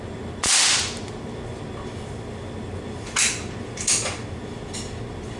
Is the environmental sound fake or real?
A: real